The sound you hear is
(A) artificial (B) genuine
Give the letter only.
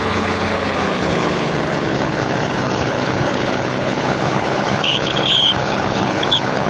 A